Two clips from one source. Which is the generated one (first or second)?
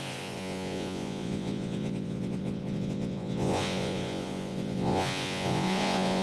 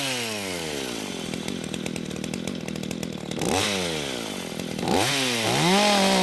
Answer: first